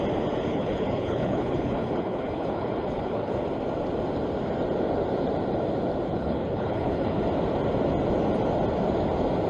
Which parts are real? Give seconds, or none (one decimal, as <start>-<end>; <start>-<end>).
0.0-0.5; 3.4-6.1; 7.2-9.5